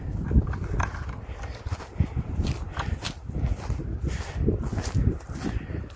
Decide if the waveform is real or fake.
real